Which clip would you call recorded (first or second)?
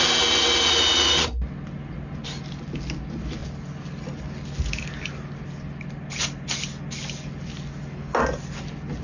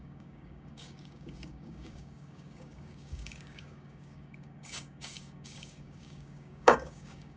first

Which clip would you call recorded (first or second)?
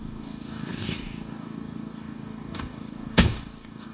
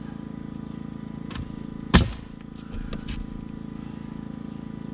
second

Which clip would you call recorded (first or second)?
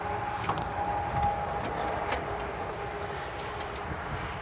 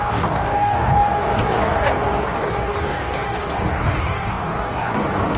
first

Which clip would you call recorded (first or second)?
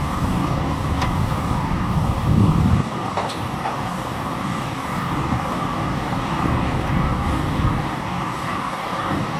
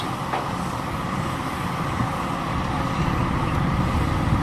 second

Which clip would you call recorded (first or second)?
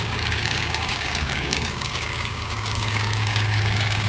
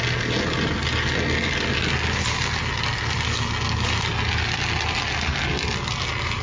second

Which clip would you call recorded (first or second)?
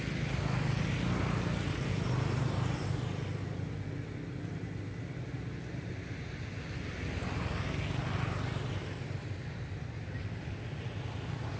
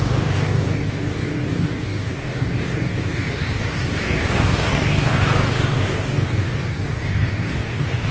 first